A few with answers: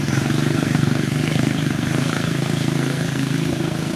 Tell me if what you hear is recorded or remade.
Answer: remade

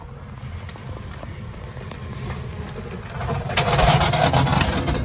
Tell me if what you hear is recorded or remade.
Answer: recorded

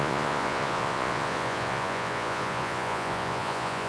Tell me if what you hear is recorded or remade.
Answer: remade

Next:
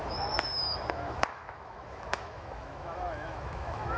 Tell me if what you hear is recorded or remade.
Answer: remade